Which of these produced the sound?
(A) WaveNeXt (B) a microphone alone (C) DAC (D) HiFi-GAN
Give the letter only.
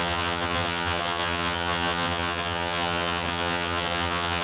D